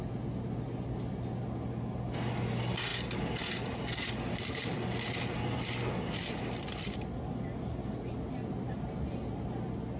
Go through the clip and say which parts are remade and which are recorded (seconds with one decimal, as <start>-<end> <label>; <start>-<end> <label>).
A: 0.0-10.0 recorded